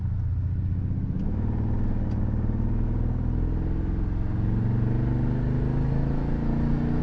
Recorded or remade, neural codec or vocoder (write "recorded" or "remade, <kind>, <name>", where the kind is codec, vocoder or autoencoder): recorded